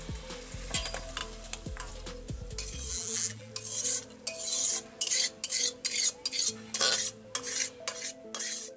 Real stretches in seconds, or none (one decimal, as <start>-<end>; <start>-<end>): 0.0-2.9; 3.5-8.8